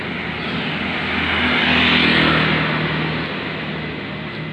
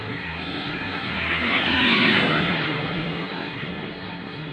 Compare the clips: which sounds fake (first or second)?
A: second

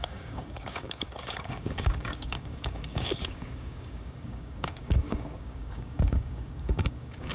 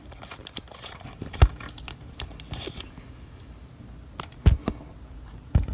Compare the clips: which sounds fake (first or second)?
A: first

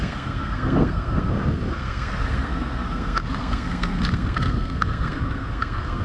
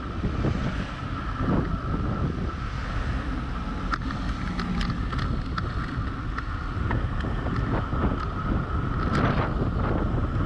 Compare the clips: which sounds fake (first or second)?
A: first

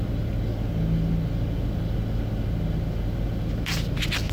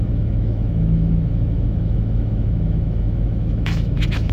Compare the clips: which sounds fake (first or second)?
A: second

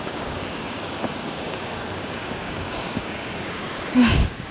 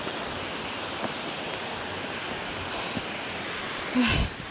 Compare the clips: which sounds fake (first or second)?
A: first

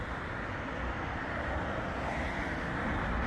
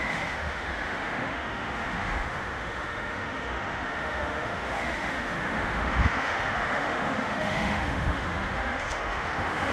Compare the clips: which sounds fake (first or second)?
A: second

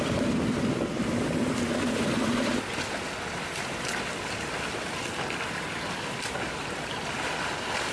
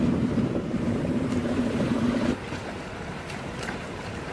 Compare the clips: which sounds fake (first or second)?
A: second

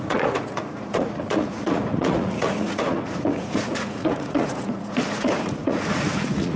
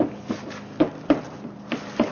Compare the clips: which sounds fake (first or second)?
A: first